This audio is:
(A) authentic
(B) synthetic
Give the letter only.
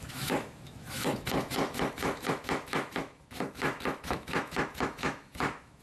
B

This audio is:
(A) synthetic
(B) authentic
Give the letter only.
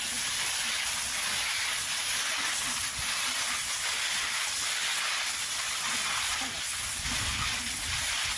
B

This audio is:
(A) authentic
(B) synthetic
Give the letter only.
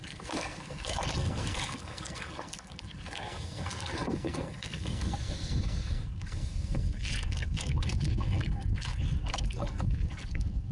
B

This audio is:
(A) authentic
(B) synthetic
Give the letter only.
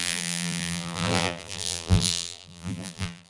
B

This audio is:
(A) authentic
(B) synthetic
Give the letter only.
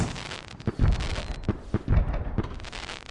A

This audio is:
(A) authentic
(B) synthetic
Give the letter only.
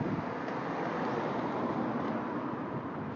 A